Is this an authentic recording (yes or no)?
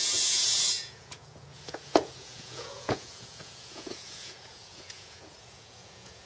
no